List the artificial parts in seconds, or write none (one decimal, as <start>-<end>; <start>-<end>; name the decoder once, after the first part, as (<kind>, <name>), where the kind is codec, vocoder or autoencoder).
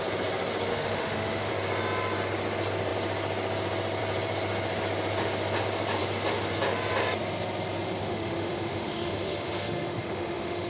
0.7-1.5 (autoencoder, DAC-VAE); 8.0-10.7